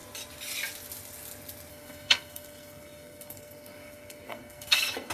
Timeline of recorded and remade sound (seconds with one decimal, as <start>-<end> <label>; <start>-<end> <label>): 0.0-1.7 recorded; 1.7-5.1 remade